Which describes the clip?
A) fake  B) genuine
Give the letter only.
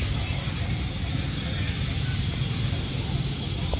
B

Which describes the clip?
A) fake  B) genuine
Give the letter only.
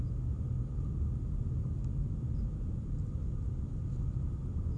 B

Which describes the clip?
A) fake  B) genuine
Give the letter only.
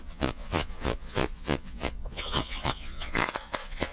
A